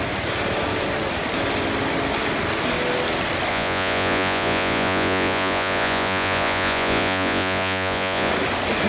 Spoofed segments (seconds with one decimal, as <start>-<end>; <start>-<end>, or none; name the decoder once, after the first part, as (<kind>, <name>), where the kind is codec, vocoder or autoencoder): 3.5-8.3 (vocoder, Vocos)